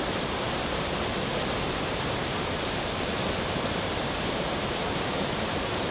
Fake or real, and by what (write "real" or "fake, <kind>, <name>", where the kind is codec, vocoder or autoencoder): fake, vocoder, BigVGAN v2